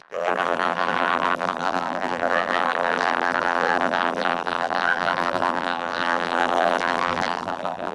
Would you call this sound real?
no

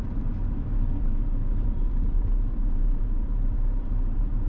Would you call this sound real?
no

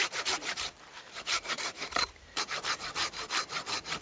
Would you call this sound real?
no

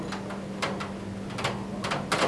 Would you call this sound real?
yes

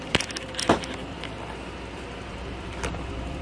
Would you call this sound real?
no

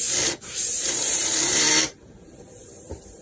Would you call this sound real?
no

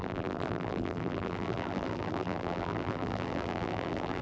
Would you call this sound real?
no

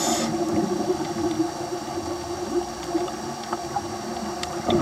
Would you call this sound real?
no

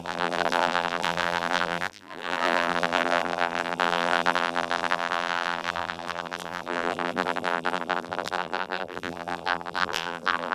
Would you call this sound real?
no